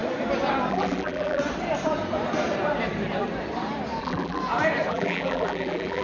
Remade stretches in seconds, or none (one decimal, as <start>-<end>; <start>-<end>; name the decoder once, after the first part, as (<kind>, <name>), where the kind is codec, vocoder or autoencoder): 0.7-1.4 (vocoder, BigVGAN v2); 4.0-4.4; 4.9-6.0